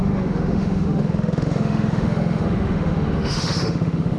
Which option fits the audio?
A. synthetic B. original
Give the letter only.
A